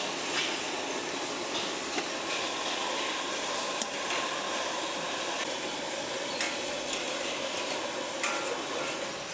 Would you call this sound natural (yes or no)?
yes